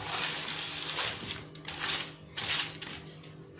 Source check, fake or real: real